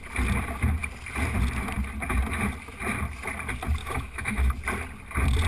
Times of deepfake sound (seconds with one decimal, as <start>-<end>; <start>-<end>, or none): 3.8-4.5